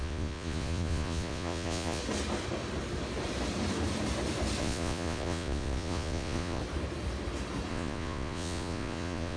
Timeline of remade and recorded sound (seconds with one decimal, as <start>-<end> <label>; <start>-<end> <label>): 0.0-2.0 remade; 2.0-4.6 recorded; 4.6-6.6 remade; 6.6-7.7 recorded; 7.7-9.4 remade